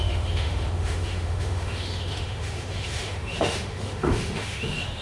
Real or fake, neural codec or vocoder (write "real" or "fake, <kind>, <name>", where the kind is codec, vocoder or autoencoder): fake, autoencoder, DAC-VAE